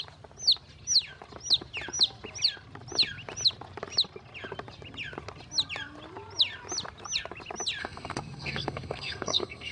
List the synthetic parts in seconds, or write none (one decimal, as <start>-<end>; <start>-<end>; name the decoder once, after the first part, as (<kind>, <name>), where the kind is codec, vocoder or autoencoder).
7.8-9.7 (codec, SNAC)